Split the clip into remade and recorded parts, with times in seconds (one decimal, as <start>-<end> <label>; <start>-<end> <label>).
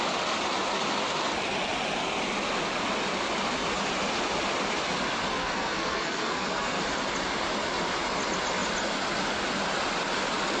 0.0-5.3 recorded; 5.3-6.8 remade; 6.8-10.6 recorded